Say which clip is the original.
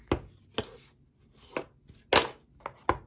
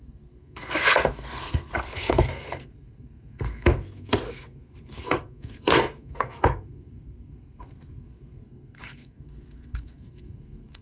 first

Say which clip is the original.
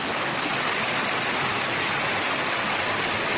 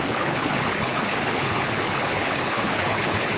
first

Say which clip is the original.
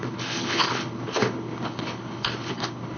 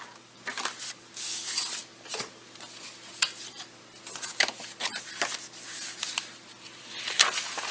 second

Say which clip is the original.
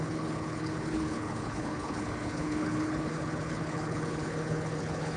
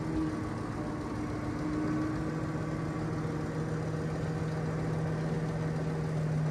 second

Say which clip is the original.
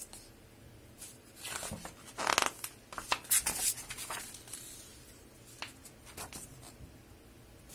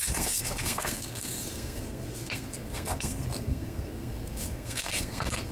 first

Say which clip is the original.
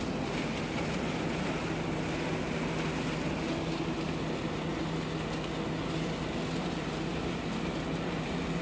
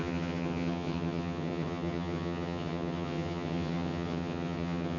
first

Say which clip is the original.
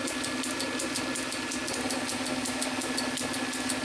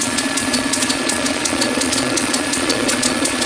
first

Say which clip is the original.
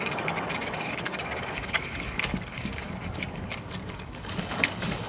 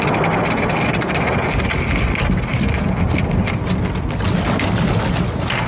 second